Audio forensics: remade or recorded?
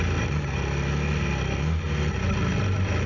recorded